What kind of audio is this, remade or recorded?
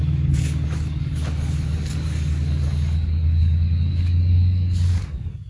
remade